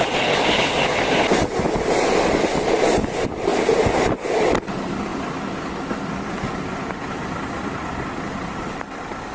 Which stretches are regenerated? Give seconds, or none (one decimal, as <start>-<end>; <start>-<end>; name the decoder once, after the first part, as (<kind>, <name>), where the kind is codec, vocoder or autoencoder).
0.0-3.5 (vocoder, BigVGAN v2); 4.4-5.1; 6.0-9.3